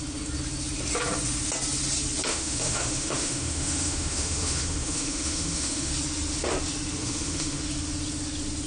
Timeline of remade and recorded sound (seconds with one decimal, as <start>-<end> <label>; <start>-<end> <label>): 0.0-2.3 recorded; 2.3-5.9 remade; 5.9-7.0 recorded; 7.0-7.6 remade; 7.6-8.7 recorded